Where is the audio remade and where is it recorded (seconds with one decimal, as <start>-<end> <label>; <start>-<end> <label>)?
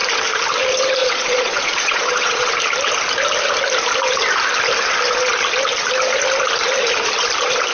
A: 0.0-1.0 recorded; 1.0-2.5 remade; 2.5-7.7 recorded